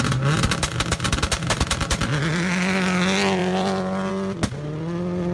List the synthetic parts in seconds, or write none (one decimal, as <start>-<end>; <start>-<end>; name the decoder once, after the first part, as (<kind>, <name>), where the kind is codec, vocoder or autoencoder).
3.4-4.1 (vocoder, BigVGAN v2)